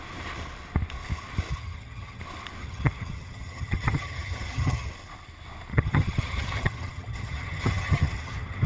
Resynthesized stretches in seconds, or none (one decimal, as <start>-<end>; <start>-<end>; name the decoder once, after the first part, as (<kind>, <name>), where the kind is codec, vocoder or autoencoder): 1.5-2.2 (vocoder, HiFi-GAN); 2.6-4.9; 5.7-8.7